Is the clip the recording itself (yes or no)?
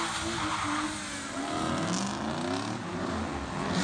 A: yes